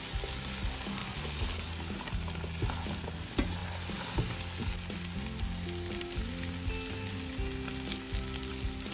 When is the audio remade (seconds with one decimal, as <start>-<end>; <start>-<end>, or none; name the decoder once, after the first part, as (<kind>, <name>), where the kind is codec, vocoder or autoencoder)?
none